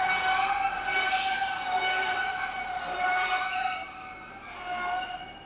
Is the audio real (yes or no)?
yes